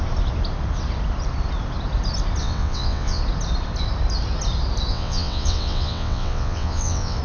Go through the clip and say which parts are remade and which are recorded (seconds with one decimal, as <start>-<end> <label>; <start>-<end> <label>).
0.0-2.4 recorded; 2.4-3.2 remade; 3.2-4.9 recorded; 4.9-7.2 remade